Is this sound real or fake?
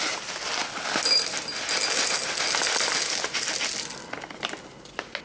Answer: real